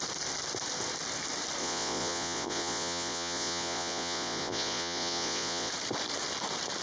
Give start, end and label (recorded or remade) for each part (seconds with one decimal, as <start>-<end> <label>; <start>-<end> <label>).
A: 0.0-1.6 recorded; 1.6-5.7 remade; 5.7-6.8 recorded